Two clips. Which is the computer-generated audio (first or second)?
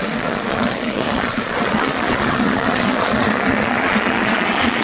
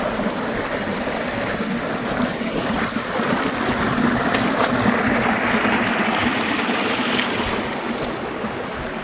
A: first